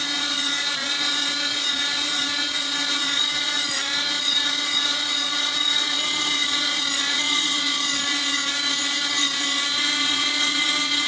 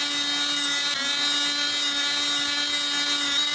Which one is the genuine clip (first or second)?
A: second